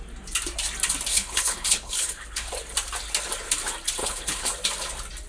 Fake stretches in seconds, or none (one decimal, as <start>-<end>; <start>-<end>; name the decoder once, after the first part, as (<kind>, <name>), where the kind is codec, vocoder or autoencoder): 1.1-2.5 (codec, HILCodec); 4.0-4.5